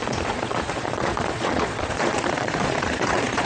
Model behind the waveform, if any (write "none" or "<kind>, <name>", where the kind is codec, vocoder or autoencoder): vocoder, Vocos